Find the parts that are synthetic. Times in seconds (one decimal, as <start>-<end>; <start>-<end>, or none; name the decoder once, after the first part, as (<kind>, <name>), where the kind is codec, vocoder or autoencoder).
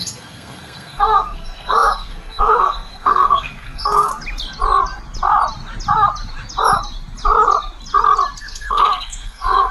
0.0-4.1 (codec, SNAC); 8.4-9.7